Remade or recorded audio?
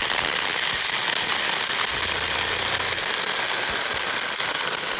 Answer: recorded